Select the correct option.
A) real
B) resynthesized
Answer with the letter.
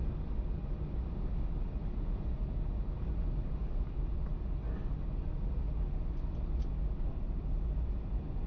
A